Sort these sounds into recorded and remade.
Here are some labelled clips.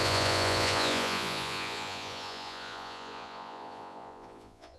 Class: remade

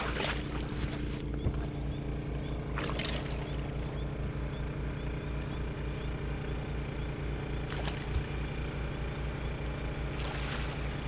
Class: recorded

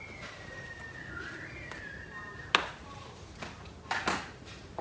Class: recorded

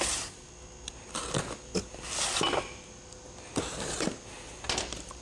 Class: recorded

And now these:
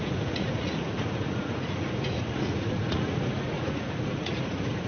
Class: remade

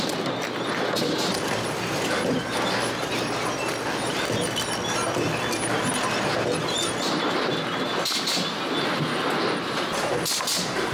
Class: recorded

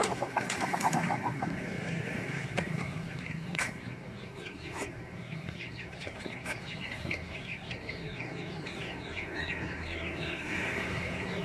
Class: remade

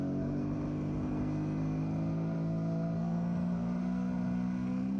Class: remade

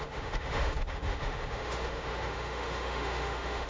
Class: remade